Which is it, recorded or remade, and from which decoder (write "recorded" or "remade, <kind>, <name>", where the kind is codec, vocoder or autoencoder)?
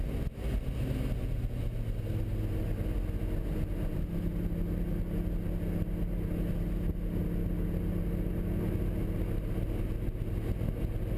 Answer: recorded